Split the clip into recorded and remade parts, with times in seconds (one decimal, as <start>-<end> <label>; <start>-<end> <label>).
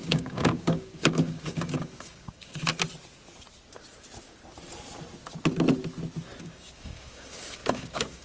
0.0-2.7 remade; 2.7-6.4 recorded; 6.4-8.2 remade